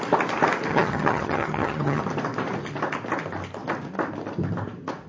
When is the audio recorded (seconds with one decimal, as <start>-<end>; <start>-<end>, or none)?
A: 0.0-0.7; 2.0-5.1